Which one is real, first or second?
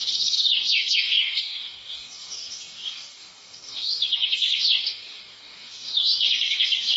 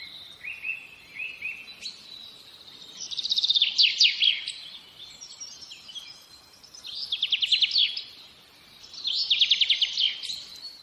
second